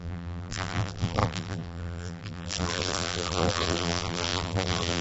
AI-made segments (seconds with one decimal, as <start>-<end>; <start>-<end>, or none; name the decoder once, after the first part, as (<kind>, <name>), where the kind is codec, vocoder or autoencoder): 0.0-5.0 (vocoder, BigVGAN v2)